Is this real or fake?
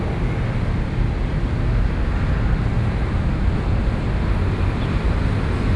real